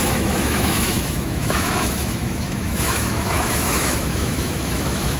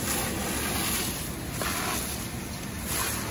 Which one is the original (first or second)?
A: second